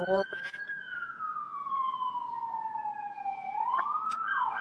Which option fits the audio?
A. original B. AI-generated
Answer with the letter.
B